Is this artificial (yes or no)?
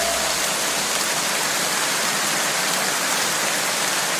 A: no